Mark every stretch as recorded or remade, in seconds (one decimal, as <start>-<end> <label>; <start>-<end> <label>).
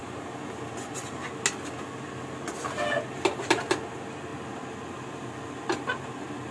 0.0-6.5 recorded